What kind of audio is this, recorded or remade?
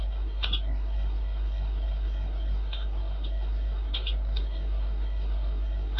remade